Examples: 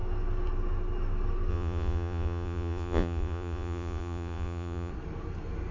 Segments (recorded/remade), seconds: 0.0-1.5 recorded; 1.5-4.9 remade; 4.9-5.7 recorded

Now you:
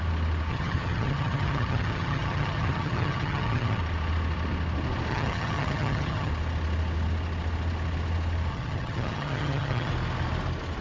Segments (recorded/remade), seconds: 0.0-0.5 recorded; 0.5-3.8 remade; 3.8-5.1 recorded; 5.1-6.3 remade; 6.3-8.5 recorded; 8.5-9.9 remade; 9.9-10.8 recorded

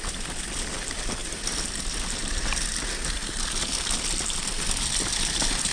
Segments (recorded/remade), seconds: 0.0-5.7 recorded